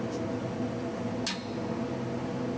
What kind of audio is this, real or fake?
real